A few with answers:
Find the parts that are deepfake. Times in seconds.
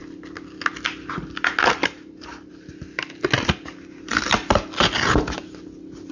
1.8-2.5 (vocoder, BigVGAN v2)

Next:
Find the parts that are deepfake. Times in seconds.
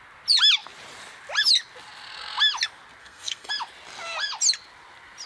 3.0-3.5 (codec, SNAC)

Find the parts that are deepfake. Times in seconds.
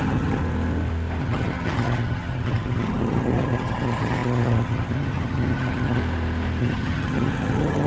0.0-0.4 (vocoder, HiFi-GAN); 1.2-6.0; 6.6-7.9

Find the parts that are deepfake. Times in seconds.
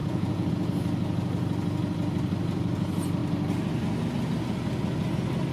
0.0-0.5 (vocoder, Vocos)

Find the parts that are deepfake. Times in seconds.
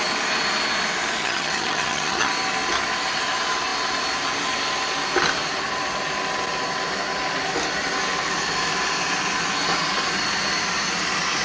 1.2-2.3 (vocoder, HiFi-GAN)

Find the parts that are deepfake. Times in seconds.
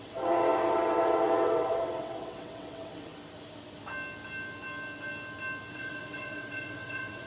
0.0-3.1 (vocoder, WaveNeXt); 5.7-7.3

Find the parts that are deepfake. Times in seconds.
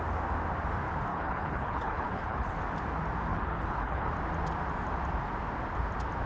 1.1-2.6 (codec, HILCodec); 3.3-4.1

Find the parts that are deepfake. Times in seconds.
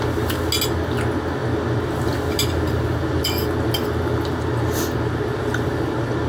none